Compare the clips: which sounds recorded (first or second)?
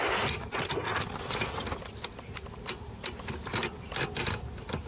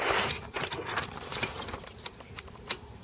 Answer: first